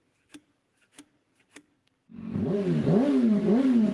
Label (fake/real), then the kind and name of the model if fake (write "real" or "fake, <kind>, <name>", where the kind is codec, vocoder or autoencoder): fake, codec, DAC